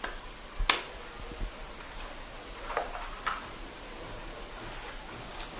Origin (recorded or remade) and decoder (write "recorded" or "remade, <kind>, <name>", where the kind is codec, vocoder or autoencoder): recorded